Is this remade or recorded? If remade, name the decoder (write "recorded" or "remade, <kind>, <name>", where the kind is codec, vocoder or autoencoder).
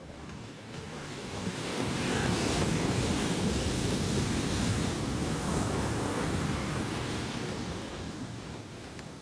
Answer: remade, codec, DAC